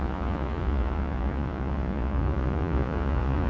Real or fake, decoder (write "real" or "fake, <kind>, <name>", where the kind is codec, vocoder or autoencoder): fake, vocoder, Vocos